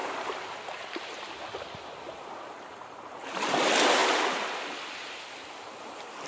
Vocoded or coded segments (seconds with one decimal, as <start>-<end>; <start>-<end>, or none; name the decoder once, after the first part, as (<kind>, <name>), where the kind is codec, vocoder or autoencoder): none